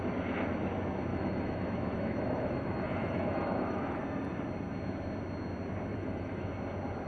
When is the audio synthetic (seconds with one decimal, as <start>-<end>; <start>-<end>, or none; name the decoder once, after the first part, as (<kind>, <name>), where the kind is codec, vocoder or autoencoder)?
1.1-4.0 (autoencoder, DAC-VAE); 5.9-6.5